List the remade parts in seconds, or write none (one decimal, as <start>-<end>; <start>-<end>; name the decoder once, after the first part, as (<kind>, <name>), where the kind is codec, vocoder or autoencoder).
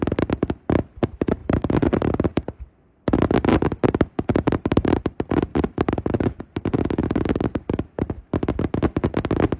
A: 1.4-2.6 (vocoder, BigVGAN v2); 3.5-5.0; 5.5-6.4; 7.0-8.1